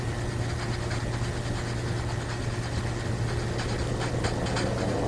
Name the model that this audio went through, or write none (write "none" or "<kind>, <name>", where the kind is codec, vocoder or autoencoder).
none